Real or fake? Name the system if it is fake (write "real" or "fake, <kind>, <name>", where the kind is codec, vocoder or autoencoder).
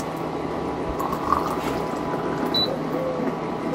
real